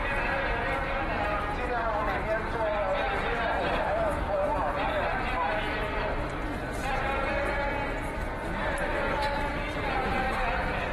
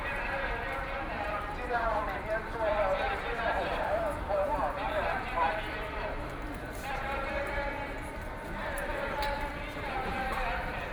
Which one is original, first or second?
first